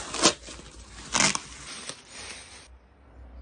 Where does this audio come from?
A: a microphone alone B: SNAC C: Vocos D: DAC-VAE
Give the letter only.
A